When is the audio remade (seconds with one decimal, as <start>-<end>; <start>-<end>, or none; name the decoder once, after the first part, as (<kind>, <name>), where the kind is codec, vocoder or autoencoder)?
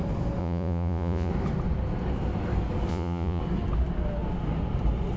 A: 0.4-1.3 (vocoder, Vocos); 2.9-3.4